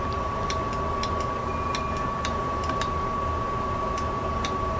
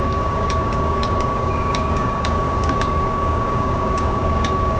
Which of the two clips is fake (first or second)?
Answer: second